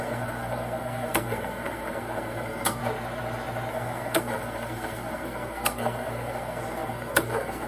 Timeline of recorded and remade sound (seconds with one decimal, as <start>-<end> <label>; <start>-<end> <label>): 0.0-2.8 remade; 2.8-3.7 recorded; 3.7-7.7 remade